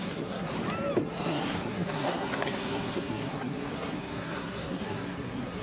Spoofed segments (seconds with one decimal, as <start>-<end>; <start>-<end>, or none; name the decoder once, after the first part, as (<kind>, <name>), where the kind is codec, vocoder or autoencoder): 0.0-0.5 (codec, SNAC); 1.0-5.6